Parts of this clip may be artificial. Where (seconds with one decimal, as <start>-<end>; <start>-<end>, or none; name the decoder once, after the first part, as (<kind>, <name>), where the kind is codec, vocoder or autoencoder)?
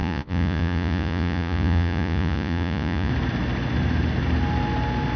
0.0-3.1 (vocoder, Vocos)